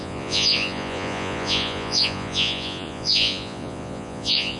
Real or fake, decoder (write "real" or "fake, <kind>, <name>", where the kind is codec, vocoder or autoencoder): fake, vocoder, Vocos